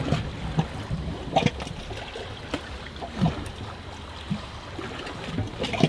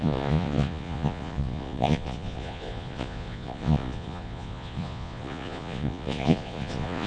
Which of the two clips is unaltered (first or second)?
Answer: first